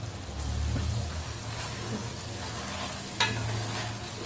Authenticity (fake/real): real